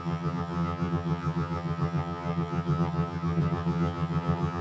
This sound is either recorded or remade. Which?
remade